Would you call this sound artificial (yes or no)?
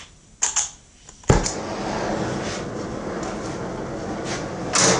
no